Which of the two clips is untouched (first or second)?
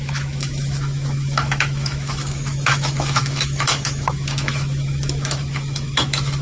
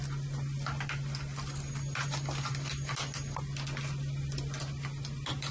second